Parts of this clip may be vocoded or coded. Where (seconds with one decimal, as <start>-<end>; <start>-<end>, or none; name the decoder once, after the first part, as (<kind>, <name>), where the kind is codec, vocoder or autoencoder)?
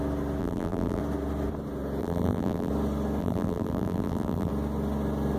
0.4-1.0 (vocoder, BigVGAN v2); 2.0-2.7; 3.2-4.5